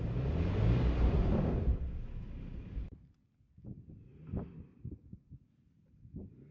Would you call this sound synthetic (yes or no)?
no